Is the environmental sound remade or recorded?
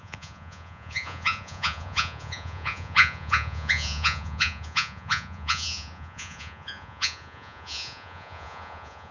remade